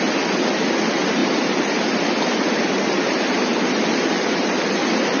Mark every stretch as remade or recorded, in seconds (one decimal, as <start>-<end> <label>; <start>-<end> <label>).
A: 0.0-5.2 recorded